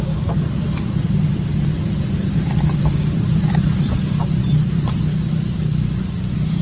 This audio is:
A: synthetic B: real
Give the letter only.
A